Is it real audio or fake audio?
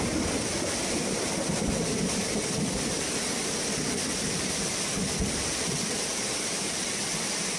real